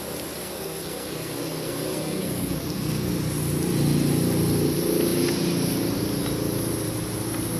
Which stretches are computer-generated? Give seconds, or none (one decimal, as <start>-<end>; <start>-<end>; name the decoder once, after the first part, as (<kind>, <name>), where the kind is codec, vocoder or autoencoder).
0.4-3.1 (codec, SNAC)